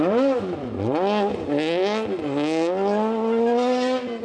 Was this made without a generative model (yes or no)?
yes